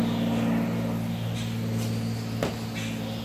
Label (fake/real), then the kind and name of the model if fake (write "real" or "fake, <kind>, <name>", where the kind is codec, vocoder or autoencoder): real